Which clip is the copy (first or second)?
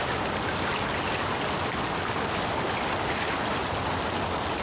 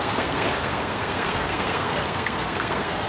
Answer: second